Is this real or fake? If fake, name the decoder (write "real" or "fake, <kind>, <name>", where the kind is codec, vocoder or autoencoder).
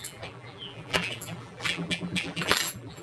fake, vocoder, BigVGAN v2